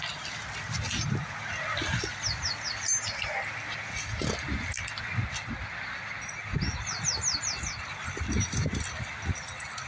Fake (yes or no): no